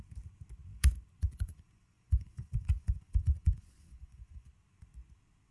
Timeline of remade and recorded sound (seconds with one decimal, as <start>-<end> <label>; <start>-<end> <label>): 0.0-1.2 recorded; 1.2-4.5 remade; 4.5-5.5 recorded